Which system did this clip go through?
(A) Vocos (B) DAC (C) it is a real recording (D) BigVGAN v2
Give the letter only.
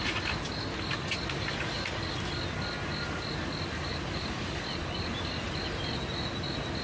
C